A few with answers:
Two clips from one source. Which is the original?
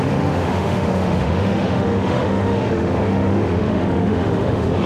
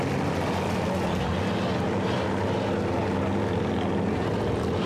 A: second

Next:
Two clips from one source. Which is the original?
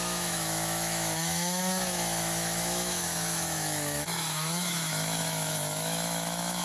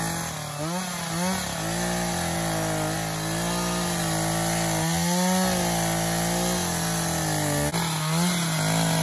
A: second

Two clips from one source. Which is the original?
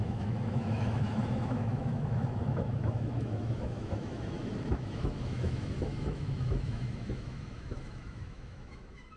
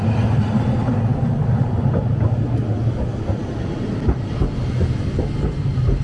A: second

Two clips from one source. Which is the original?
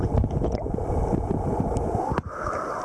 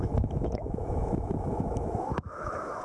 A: first